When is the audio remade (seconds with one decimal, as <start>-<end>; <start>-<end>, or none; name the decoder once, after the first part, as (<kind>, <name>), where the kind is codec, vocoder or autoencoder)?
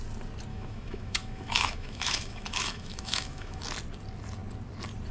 0.5-3.6 (autoencoder, DAC-VAE)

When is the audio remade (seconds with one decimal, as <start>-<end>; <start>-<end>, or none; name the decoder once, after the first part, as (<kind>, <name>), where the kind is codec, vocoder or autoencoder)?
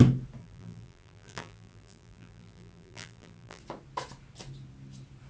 0.4-3.6 (vocoder, BigVGAN v2)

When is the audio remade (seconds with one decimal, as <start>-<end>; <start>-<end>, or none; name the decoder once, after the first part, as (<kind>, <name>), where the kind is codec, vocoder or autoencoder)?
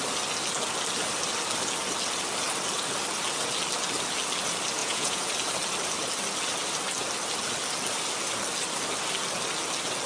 4.8-5.3 (vocoder, Vocos)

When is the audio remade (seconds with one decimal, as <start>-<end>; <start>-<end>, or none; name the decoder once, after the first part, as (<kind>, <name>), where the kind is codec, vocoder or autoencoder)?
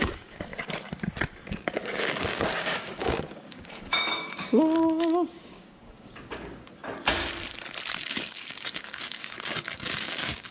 0.0-0.5 (codec, DAC); 1.4-6.8; 8.0-10.5